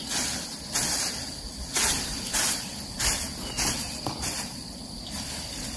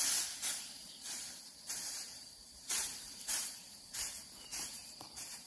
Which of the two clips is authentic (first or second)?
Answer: first